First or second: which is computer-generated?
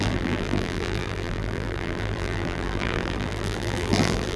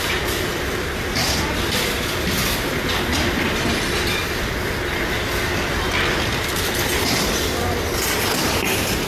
first